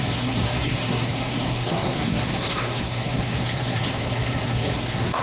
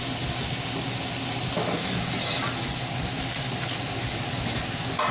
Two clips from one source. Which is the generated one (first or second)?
first